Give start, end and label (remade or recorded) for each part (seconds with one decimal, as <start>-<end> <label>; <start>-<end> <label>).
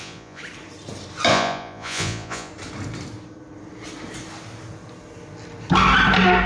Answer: 0.0-0.4 remade; 0.4-1.3 recorded; 1.3-2.5 remade; 2.5-6.5 recorded